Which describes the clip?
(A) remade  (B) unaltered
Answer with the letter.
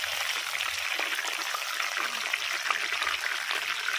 B